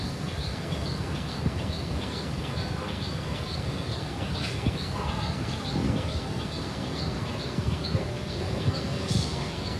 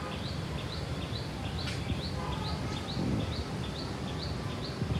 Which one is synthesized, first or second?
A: first